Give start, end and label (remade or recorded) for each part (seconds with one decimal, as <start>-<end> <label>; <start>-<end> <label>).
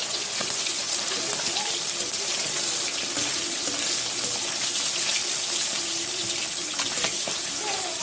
0.0-0.9 remade; 0.9-8.0 recorded